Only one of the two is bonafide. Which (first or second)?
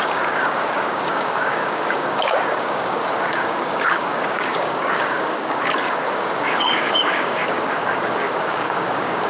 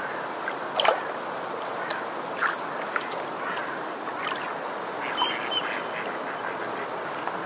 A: second